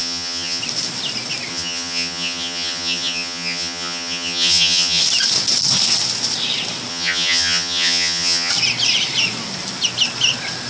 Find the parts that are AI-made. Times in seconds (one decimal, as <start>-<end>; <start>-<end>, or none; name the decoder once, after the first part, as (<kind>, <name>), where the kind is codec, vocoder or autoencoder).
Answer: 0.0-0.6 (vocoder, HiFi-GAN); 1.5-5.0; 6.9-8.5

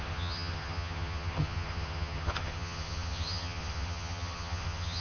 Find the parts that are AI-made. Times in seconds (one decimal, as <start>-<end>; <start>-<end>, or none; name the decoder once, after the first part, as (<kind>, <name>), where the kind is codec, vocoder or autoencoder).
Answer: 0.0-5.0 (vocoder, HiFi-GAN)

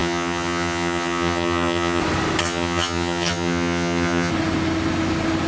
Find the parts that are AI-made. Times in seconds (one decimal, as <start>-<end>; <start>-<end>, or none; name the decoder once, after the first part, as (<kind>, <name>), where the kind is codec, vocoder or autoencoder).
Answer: 0.0-2.0 (vocoder, HiFi-GAN); 2.4-4.3

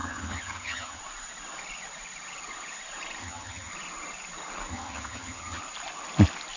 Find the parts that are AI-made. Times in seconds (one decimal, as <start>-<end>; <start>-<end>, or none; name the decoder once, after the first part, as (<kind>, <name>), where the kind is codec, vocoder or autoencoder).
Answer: 0.0-1.0 (vocoder, HiFi-GAN); 3.2-3.7; 4.7-5.6